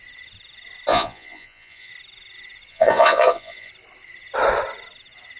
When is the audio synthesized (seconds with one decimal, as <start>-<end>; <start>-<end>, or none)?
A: 0.9-1.9; 2.7-3.7